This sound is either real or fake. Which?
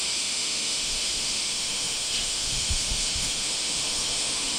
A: fake